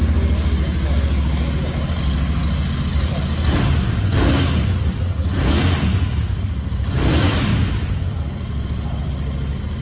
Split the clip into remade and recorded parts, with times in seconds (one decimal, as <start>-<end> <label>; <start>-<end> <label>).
0.0-7.1 recorded; 7.1-9.1 remade; 9.1-9.8 recorded

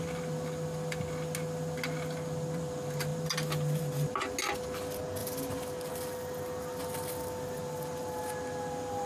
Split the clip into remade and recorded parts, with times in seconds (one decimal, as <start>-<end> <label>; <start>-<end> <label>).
0.0-9.1 recorded

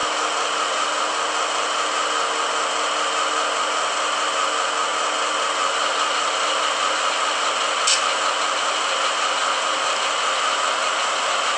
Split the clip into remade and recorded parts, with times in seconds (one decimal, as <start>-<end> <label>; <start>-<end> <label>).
0.0-11.6 recorded

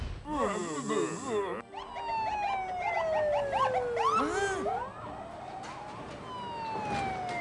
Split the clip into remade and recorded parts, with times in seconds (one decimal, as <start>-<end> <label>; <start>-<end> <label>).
0.0-7.4 recorded

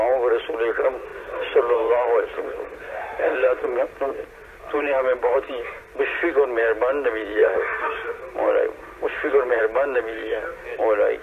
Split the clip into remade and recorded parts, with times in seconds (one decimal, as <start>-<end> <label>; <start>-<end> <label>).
0.0-1.1 recorded; 1.1-6.0 remade; 6.0-7.4 recorded; 7.4-9.6 remade; 9.6-11.2 recorded

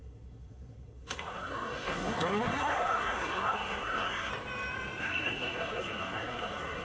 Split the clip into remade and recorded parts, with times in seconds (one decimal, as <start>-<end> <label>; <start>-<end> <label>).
0.0-4.3 remade; 4.3-5.0 recorded; 5.0-6.8 remade

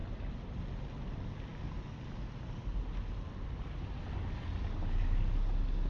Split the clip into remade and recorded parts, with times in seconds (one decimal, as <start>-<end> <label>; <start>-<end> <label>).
0.0-0.6 remade; 0.6-5.9 recorded

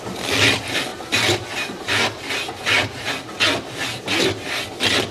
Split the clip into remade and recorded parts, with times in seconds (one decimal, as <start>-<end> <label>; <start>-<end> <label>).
0.0-5.1 recorded